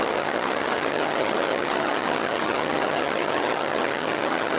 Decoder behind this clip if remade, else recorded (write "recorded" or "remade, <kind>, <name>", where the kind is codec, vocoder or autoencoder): remade, vocoder, HiFi-GAN